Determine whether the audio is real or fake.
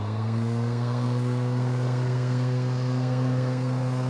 fake